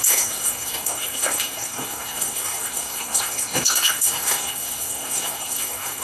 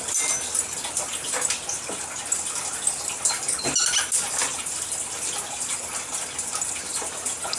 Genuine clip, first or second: second